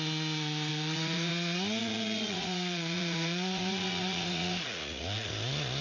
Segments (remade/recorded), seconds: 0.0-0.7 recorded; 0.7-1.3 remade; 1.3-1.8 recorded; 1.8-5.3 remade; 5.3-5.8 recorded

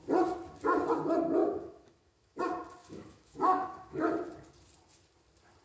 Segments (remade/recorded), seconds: 0.0-1.4 recorded; 1.4-2.4 remade; 2.4-2.8 recorded; 2.8-4.0 remade; 4.0-5.6 recorded

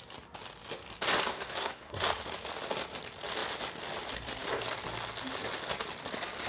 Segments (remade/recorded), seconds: 0.0-1.3 recorded; 1.3-2.0 remade; 2.0-6.5 recorded

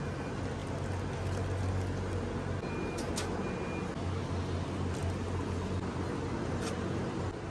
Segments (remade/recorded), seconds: 0.0-7.5 recorded

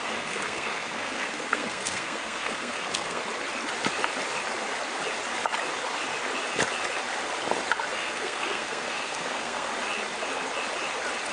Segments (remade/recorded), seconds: 0.0-3.2 remade; 3.2-7.9 recorded; 7.9-9.7 remade; 9.7-11.3 recorded

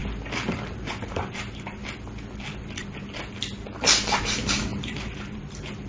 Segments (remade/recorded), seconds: 0.0-0.9 recorded; 0.9-1.8 remade; 1.8-4.2 recorded; 4.2-5.9 remade

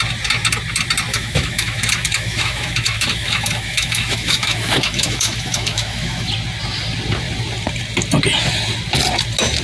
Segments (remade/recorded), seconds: 0.0-1.1 recorded; 1.1-6.3 remade; 6.3-9.6 recorded

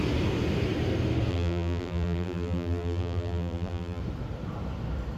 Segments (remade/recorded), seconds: 0.0-1.3 recorded; 1.3-4.0 remade; 4.0-5.2 recorded